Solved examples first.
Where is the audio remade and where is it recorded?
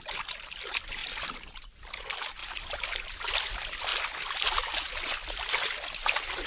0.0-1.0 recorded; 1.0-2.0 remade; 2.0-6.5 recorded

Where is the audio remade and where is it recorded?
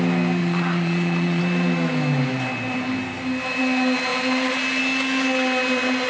0.0-0.4 recorded; 0.4-1.4 remade; 1.4-6.1 recorded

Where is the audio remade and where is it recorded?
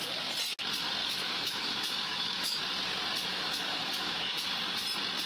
0.0-1.0 recorded; 1.0-2.6 remade; 2.6-3.3 recorded; 3.3-4.5 remade; 4.5-5.3 recorded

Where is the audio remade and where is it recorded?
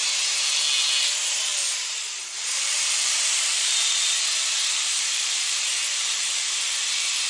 0.0-1.0 recorded; 1.0-7.3 remade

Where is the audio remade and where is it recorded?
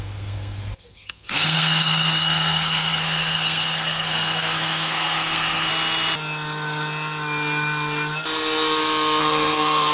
0.0-5.7 remade; 5.7-9.2 recorded; 9.2-9.9 remade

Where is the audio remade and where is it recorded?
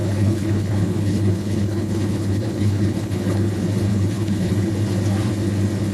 0.0-3.5 remade; 3.5-3.9 recorded; 3.9-4.5 remade; 4.5-5.9 recorded